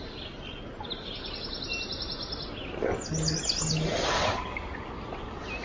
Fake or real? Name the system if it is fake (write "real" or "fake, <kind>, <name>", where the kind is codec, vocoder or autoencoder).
real